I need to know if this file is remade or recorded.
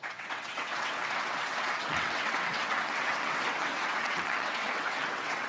remade